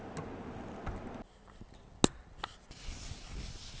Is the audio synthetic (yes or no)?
no